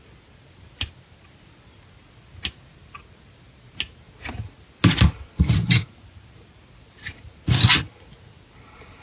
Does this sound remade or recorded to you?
recorded